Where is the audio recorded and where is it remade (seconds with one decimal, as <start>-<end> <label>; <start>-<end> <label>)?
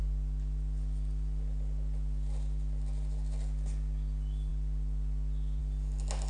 0.0-6.3 recorded